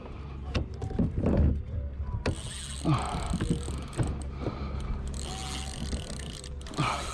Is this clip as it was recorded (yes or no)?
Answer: yes